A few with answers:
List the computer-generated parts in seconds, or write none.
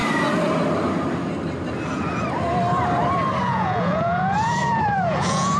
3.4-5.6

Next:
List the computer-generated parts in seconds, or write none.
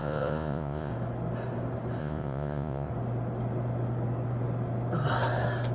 0.0-0.9; 2.0-2.9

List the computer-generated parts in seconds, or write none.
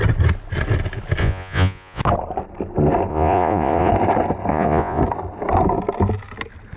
1.2-2.0; 3.1-3.9; 4.5-5.0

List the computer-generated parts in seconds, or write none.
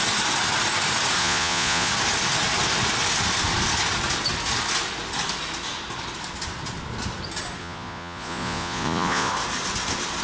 1.2-1.9; 7.6-9.3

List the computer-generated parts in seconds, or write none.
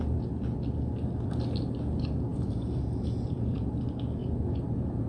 2.3-3.7; 4.2-5.1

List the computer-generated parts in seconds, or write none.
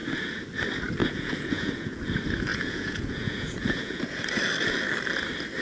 1.0-2.1; 2.5-4.2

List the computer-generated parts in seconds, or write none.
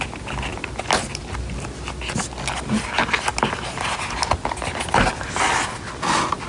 none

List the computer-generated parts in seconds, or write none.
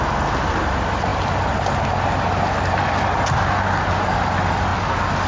none